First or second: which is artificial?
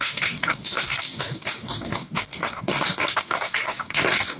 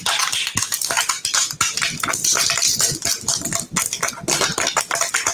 first